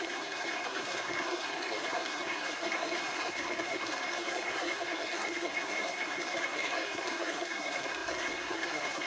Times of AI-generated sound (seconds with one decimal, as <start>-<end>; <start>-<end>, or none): 0.0-9.1